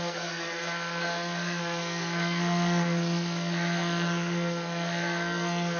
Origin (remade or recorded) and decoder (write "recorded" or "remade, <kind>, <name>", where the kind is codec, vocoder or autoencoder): remade, codec, SNAC